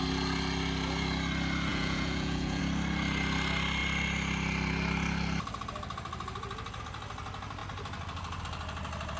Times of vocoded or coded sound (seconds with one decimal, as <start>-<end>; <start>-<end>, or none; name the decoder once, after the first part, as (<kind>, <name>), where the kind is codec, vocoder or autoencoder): 1.7-2.6 (vocoder, Vocos)